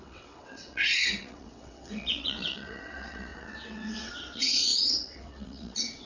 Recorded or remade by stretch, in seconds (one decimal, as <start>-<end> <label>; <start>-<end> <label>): 0.0-6.1 remade

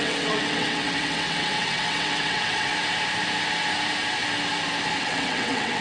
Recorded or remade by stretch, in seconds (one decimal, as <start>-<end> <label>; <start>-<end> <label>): 0.0-2.7 remade; 2.7-5.0 recorded; 5.0-5.8 remade

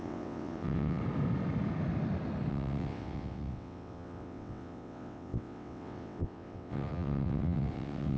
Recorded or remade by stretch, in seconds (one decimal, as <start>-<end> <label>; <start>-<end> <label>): 0.0-1.0 remade; 1.0-2.5 recorded; 2.5-8.2 remade

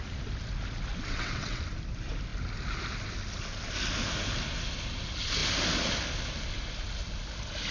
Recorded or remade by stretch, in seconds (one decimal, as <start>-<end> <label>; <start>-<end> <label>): 0.0-0.9 recorded; 0.9-1.6 remade; 1.6-7.7 recorded

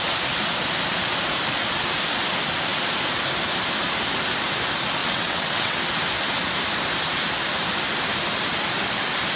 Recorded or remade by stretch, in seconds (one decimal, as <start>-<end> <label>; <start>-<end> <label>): 0.0-5.0 recorded; 5.0-5.8 remade; 5.8-9.4 recorded

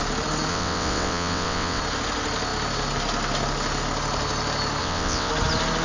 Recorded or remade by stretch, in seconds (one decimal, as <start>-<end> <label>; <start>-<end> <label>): 0.0-0.5 recorded; 0.5-1.8 remade; 1.8-4.8 recorded; 4.8-5.3 remade; 5.3-5.8 recorded

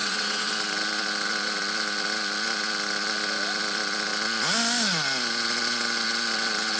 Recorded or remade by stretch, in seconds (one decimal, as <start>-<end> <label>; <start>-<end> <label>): 0.0-0.5 remade; 0.5-6.8 recorded

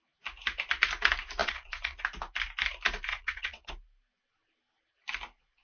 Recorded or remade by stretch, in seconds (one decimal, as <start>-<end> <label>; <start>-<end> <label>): 0.0-1.4 recorded; 1.4-2.0 remade; 2.0-3.1 recorded; 3.1-3.7 remade; 3.7-5.6 recorded